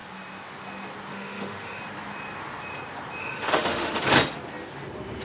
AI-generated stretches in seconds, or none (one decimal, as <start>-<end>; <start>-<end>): 1.1-1.8; 3.2-4.0